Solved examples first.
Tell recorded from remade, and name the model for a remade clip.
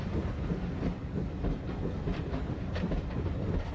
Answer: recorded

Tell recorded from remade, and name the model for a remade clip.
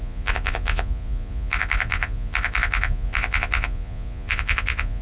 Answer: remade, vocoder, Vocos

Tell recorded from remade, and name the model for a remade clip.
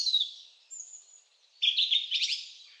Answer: remade, vocoder, BigVGAN v2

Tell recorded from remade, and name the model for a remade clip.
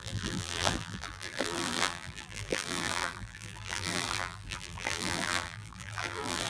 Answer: remade, vocoder, BigVGAN v2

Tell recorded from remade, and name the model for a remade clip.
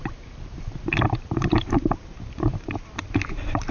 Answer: remade, vocoder, BigVGAN v2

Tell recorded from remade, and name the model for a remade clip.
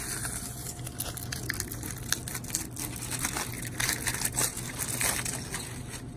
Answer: recorded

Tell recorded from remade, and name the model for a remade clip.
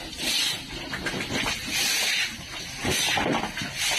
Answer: recorded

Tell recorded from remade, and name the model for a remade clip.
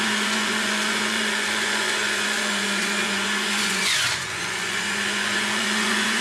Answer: remade, vocoder, Vocos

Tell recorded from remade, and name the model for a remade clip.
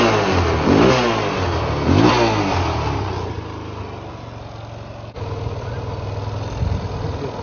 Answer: recorded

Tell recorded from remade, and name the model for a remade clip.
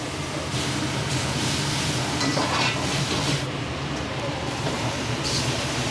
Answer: remade, vocoder, BigVGAN v2